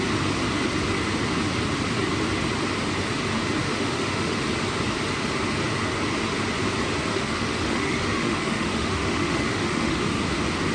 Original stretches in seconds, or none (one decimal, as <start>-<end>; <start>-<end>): 0.0-3.6; 4.4-7.1; 10.2-10.7